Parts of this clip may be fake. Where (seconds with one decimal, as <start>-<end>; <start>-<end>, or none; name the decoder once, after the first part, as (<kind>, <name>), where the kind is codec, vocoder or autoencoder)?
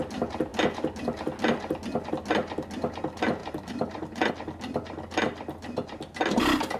3.4-4.3 (vocoder, BigVGAN v2)